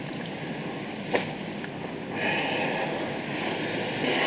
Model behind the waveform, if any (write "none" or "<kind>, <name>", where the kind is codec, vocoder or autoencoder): none